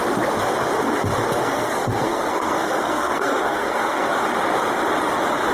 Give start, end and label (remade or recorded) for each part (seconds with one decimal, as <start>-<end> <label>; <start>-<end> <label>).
0.0-1.4 recorded; 1.4-4.1 remade; 4.1-5.5 recorded